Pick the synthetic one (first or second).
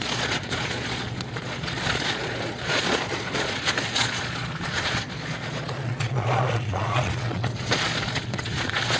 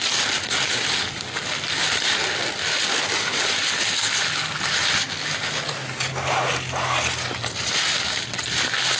first